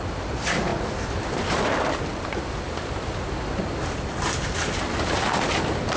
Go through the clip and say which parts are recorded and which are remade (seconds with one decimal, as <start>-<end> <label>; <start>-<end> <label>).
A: 0.0-0.7 remade; 0.7-1.2 recorded; 1.2-2.1 remade; 2.1-6.0 recorded